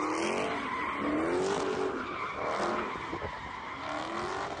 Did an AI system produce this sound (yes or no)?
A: no